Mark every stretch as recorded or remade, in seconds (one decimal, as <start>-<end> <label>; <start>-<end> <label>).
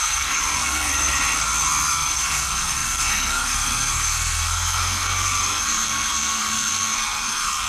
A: 0.0-0.9 remade; 0.9-1.9 recorded; 1.9-7.7 remade